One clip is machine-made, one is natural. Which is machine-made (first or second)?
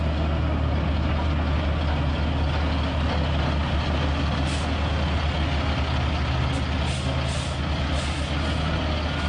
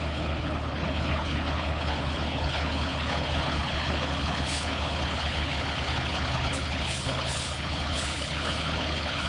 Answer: second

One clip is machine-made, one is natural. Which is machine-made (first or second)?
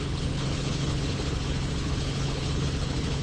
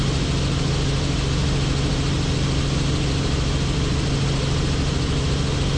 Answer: first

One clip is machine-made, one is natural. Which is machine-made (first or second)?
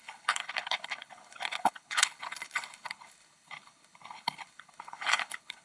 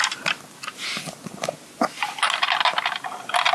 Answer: first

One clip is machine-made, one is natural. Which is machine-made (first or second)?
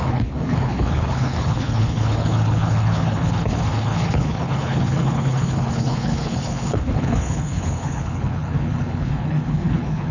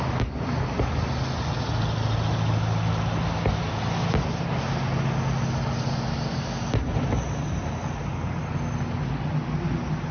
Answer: first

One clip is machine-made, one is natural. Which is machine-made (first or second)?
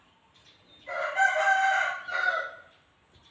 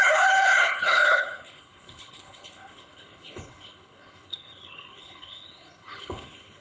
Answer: second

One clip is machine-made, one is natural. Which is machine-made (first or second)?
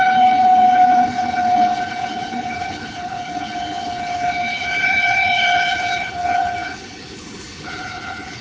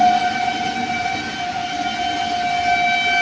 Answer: first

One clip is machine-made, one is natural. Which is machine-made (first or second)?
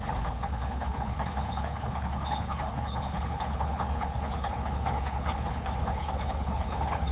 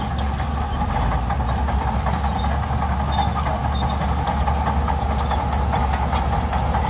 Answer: first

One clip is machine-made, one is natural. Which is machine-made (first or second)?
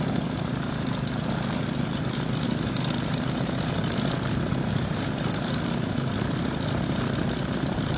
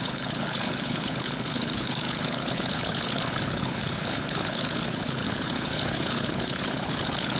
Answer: second